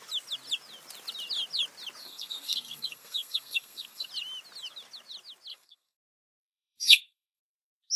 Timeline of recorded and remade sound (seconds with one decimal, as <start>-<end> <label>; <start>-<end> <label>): 0.0-2.0 recorded; 2.0-4.1 remade; 4.1-5.5 recorded; 5.5-7.4 remade; 7.4-8.0 recorded